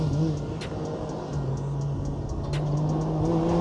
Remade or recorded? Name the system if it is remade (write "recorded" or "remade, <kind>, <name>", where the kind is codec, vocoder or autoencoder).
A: recorded